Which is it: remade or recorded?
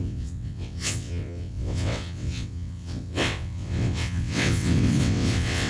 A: remade